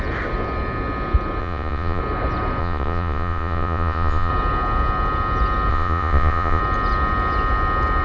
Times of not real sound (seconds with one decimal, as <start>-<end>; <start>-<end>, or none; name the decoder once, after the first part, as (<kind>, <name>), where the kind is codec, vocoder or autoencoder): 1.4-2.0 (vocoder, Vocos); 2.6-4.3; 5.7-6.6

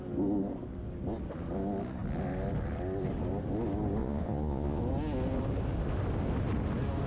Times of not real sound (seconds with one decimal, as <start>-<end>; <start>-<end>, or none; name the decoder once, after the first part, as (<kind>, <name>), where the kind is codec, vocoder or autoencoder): 4.0-4.8 (vocoder, Vocos)

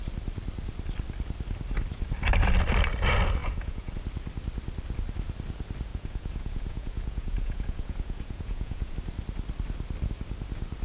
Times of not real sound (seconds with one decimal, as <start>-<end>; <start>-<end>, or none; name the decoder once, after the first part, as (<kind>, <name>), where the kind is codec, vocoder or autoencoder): 3.4-3.9 (vocoder, Vocos); 5.9-8.9

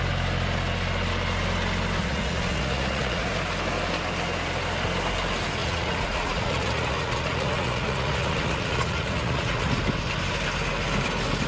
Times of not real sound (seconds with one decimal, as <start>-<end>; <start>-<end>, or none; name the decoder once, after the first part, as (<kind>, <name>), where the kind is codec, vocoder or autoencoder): 2.0-3.3 (vocoder, Vocos); 5.6-9.8

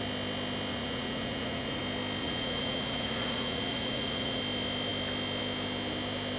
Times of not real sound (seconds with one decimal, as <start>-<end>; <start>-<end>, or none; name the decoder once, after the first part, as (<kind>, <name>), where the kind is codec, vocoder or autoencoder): 0.7-1.8 (vocoder, Vocos); 2.2-4.4

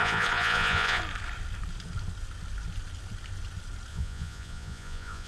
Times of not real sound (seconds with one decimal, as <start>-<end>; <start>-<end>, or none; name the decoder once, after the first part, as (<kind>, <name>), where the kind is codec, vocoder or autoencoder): 0.0-1.0 (vocoder, Vocos); 3.9-5.3

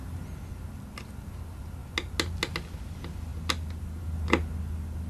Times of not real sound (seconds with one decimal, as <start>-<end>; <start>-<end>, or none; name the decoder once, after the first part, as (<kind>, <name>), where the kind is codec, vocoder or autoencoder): none

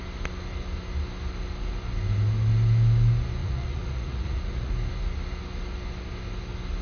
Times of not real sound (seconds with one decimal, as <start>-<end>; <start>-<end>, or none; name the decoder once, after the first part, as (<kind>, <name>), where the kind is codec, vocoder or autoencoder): 3.4-4.7 (vocoder, Vocos)